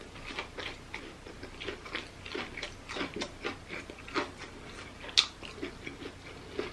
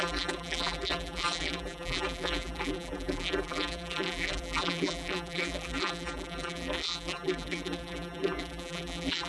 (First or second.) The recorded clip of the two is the first